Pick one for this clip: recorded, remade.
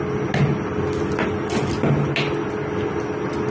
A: recorded